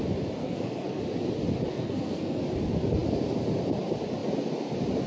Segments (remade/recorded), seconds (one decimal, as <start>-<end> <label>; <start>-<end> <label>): 0.0-0.4 recorded; 0.4-1.0 remade; 1.0-1.7 recorded; 1.7-2.4 remade; 2.4-5.1 recorded